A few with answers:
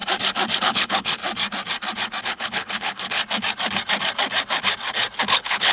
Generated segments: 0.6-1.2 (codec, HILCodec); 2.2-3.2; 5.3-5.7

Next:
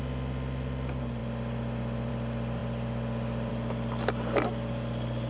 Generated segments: none